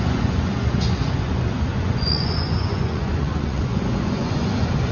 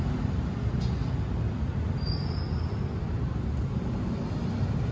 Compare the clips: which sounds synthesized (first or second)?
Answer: first